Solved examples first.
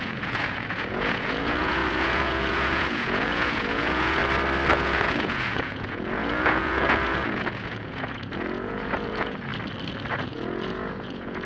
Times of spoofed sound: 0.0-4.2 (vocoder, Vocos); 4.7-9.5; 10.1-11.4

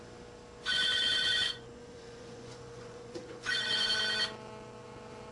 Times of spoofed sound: 0.7-3.9 (vocoder, Vocos)

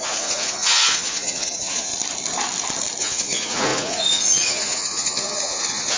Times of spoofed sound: 0.0-1.9 (vocoder, Vocos); 3.0-6.0

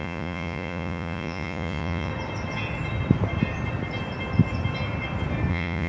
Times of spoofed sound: 0.0-2.1 (vocoder, Vocos); 5.5-5.9

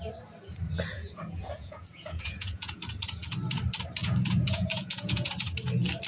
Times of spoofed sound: 0.9-2.8 (vocoder, Vocos); 4.0-5.3

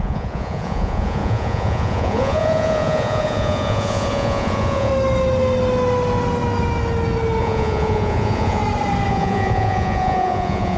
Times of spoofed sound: 0.0-4.9 (vocoder, Vocos); 7.4-8.6; 9.1-10.8